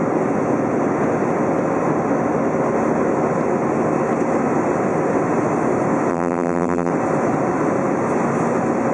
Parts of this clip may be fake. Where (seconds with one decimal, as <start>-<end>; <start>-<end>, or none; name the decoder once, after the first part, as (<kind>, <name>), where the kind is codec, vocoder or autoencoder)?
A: 6.1-6.9 (vocoder, BigVGAN v2)

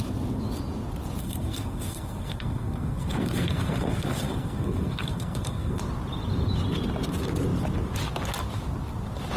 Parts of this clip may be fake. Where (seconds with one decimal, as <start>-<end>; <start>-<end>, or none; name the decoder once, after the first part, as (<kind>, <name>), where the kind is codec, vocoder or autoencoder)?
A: 1.2-5.8 (codec, SNAC)